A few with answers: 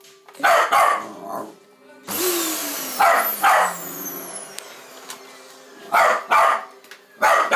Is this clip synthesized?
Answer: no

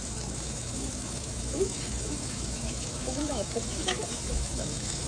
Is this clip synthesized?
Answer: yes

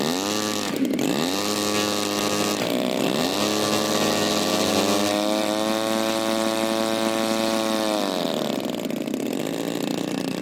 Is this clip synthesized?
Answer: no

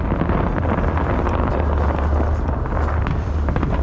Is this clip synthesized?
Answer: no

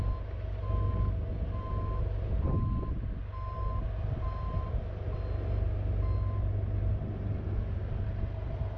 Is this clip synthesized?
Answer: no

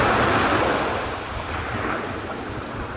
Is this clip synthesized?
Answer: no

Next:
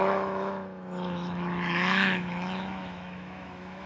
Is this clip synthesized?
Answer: yes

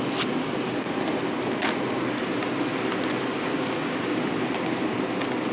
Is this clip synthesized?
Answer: no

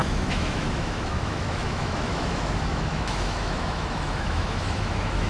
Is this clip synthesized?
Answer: yes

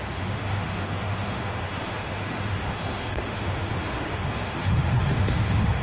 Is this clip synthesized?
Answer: yes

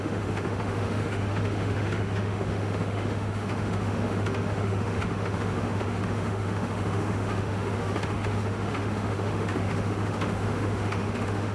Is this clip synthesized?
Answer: yes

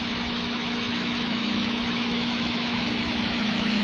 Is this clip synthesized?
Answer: yes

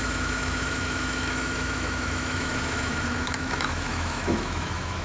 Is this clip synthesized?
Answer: yes